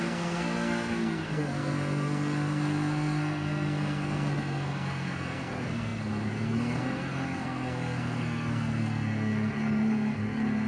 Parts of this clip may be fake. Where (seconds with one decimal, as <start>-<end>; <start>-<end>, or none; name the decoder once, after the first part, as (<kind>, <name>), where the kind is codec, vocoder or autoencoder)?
0.0-10.7 (codec, SNAC)